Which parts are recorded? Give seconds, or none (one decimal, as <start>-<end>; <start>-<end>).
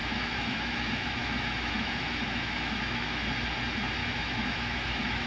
3.2-4.0